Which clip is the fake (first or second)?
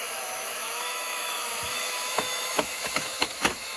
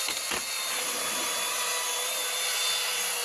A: first